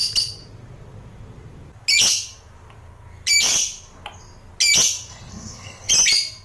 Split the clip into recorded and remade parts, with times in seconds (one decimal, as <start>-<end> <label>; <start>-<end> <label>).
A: 0.0-5.1 recorded; 5.1-5.9 remade; 5.9-6.4 recorded